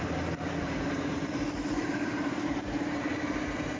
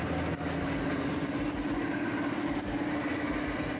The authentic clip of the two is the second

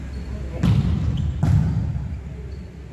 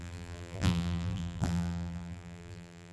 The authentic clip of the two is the first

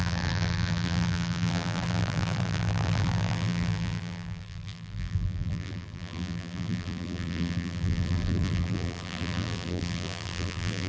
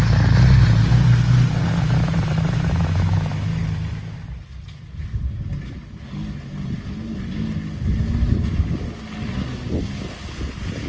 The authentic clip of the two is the second